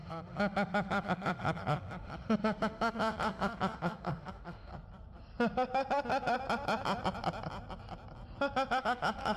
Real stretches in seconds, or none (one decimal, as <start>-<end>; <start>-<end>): 4.7-8.8